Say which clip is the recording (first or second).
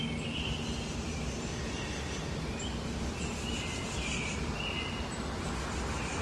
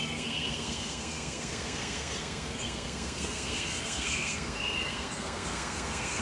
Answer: first